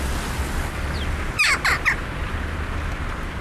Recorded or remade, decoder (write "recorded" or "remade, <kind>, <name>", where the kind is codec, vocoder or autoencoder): recorded